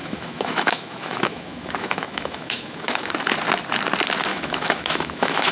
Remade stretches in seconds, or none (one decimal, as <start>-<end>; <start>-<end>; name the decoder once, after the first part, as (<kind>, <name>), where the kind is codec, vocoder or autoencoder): 0.0-3.1 (autoencoder, DAC-VAE); 4.3-5.5